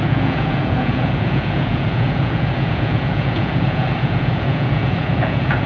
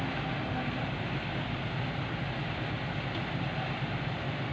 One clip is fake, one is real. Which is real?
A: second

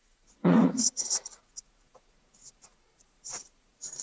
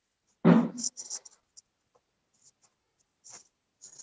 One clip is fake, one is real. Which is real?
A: second